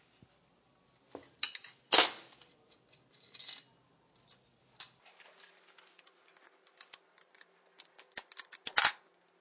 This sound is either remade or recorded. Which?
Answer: recorded